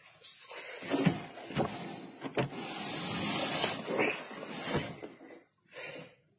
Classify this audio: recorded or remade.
recorded